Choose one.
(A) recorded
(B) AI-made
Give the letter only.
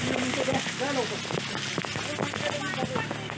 A